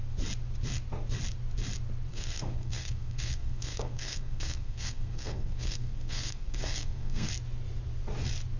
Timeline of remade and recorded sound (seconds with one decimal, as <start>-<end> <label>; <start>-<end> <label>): 0.0-2.1 recorded; 2.1-7.3 remade; 7.3-8.6 recorded